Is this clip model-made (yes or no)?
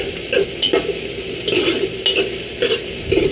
no